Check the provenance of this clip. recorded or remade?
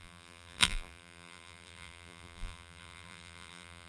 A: remade